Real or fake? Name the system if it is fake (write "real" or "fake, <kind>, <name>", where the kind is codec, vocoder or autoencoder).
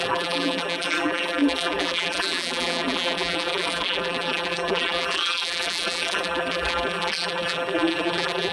fake, vocoder, BigVGAN v2